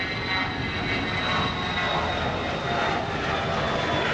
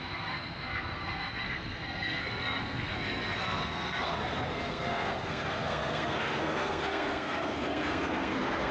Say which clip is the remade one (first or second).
second